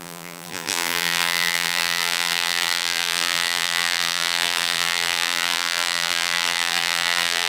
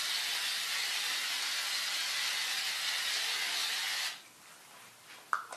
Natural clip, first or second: second